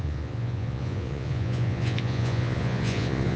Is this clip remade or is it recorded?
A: remade